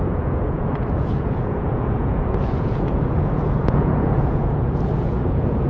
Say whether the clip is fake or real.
fake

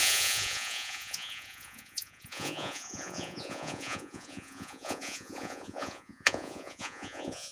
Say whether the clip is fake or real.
fake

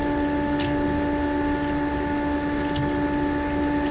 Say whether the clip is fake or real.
real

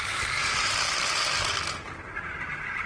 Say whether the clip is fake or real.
real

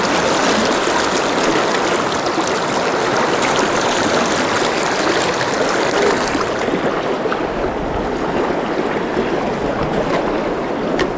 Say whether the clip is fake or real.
real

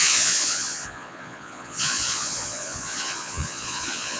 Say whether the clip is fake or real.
fake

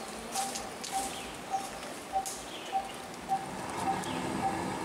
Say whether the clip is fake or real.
real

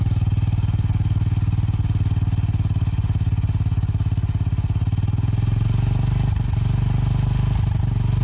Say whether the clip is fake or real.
real